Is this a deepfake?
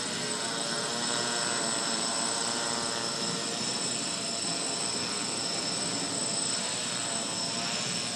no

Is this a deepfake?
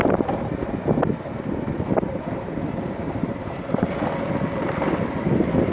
no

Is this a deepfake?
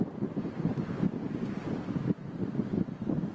no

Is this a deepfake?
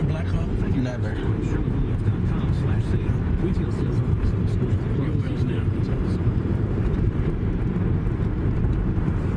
yes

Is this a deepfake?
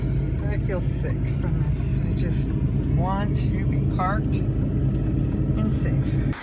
no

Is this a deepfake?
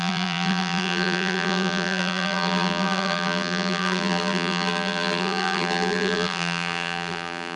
yes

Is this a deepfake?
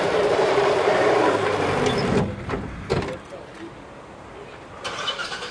yes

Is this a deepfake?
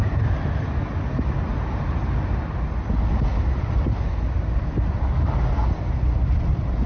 no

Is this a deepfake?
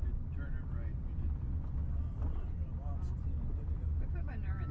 no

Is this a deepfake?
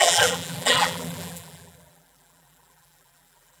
yes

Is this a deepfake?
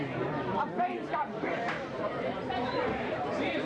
yes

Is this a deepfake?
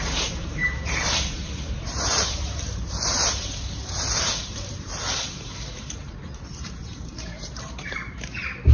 yes